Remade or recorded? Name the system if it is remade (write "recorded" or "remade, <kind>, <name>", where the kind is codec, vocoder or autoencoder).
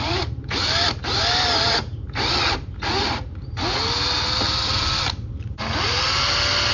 recorded